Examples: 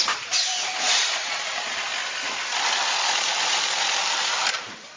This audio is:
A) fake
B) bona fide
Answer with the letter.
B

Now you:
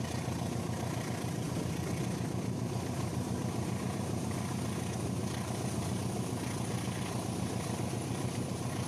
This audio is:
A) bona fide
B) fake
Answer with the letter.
A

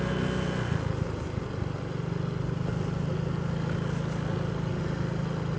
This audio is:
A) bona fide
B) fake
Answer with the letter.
A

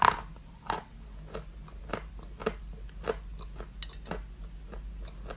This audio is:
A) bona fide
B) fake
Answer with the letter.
A